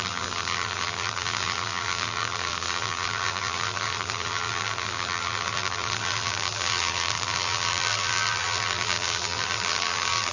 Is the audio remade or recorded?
remade